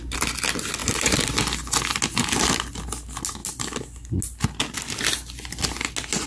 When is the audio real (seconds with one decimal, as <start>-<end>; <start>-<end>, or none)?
0.0-6.3